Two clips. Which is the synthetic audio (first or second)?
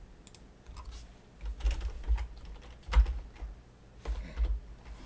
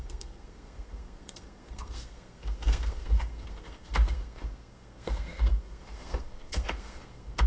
second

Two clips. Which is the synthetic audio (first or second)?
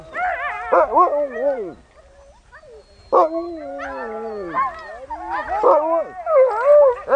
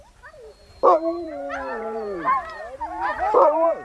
second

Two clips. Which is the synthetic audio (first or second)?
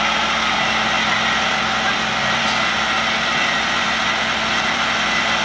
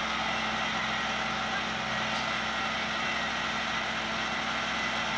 first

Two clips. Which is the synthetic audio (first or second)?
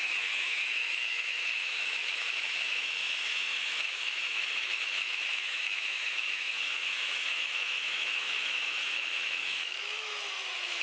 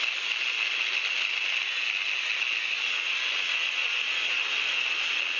first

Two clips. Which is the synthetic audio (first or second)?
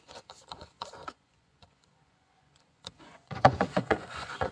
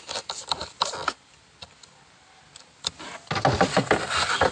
first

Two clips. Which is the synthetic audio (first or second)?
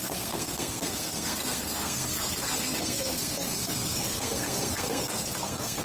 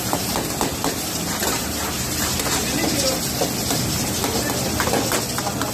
first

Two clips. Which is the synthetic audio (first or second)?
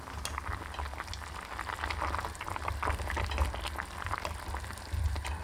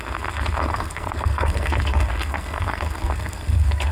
second